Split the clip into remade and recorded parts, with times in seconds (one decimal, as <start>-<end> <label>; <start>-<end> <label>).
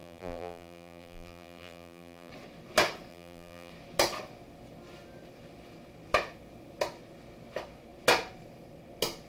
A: 0.0-2.3 remade; 2.3-3.1 recorded; 3.1-3.7 remade; 3.7-9.3 recorded